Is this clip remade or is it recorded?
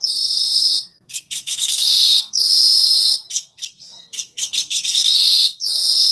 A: remade